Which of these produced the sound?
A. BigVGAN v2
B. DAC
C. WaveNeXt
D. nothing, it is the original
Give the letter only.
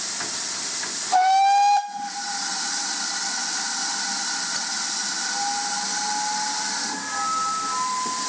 D